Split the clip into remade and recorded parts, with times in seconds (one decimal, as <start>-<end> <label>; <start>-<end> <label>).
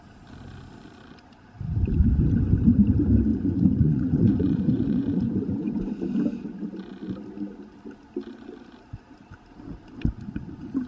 0.0-3.3 recorded; 3.3-5.8 remade; 5.8-10.9 recorded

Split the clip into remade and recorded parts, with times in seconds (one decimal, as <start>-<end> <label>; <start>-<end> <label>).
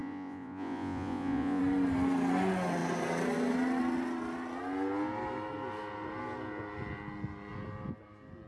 0.0-1.6 remade; 1.6-8.5 recorded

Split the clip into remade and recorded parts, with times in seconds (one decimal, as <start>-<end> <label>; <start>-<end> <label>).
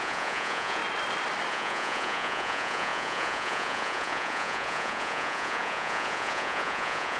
0.0-0.8 remade; 0.8-1.5 recorded; 1.5-7.2 remade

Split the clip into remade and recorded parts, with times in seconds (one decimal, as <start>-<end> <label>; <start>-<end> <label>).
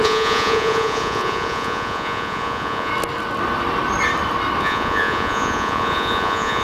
0.0-2.9 remade; 2.9-4.6 recorded; 4.6-6.6 remade